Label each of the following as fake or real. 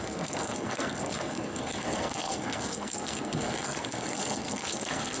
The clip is fake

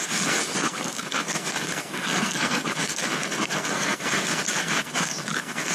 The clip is fake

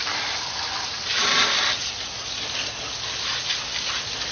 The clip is real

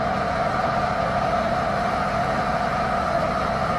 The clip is real